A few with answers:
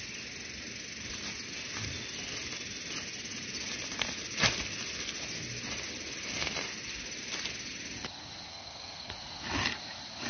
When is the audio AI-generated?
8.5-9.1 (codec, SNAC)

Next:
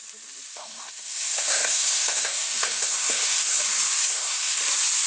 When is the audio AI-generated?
0.5-3.6 (codec, SNAC); 4.0-4.6

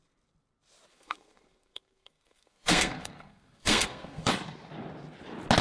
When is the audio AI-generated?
0.9-4.3 (codec, SNAC)

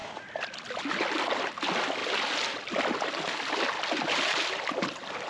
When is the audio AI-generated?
none

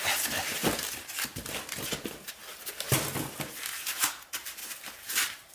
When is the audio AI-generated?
0.0-0.6 (vocoder, BigVGAN v2); 1.8-2.4; 3.6-5.5